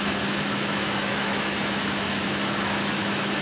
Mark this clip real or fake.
fake